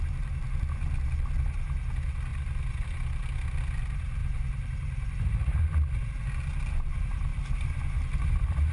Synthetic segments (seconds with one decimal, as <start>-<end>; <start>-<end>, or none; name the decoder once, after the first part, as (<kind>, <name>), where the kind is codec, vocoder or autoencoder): 2.3-2.8 (vocoder, BigVGAN v2); 4.2-5.6; 7.3-8.7